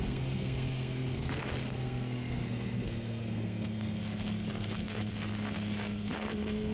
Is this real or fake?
fake